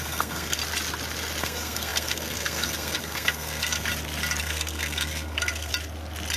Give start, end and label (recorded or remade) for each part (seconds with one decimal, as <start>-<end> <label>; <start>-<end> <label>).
0.0-0.6 remade; 0.6-1.4 recorded; 1.4-3.9 remade; 3.9-4.4 recorded; 4.4-5.7 remade; 5.7-6.4 recorded